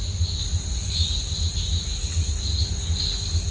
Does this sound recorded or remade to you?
recorded